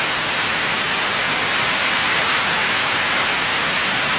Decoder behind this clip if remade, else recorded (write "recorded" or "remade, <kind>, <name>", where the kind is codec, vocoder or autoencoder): recorded